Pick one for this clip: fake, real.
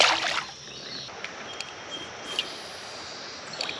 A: real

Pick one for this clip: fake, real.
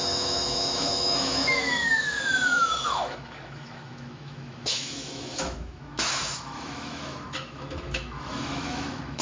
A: fake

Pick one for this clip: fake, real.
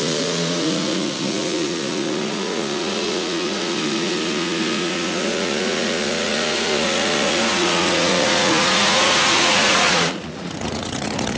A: fake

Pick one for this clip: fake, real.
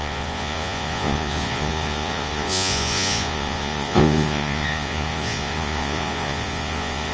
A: fake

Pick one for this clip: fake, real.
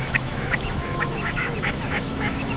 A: fake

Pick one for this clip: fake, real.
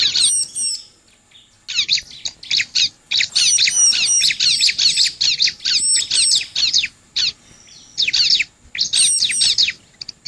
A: real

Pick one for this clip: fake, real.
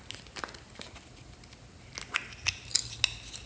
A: real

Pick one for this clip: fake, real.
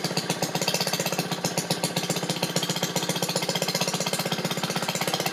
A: real